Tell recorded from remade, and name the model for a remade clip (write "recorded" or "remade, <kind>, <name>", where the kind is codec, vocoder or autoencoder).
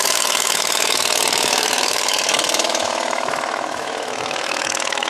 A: remade, autoencoder, DAC-VAE